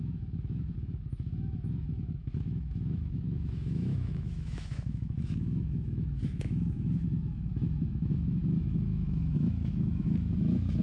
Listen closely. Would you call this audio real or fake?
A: fake